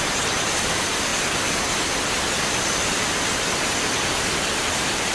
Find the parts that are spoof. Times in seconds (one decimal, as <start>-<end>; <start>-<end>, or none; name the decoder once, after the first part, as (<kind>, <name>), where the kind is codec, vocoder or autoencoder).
0.0-1.1 (vocoder, BigVGAN v2); 4.2-5.1